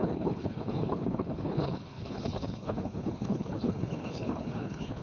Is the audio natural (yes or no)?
no